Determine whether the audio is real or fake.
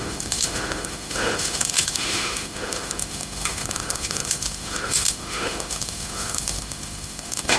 fake